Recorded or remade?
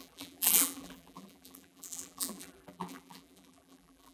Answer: remade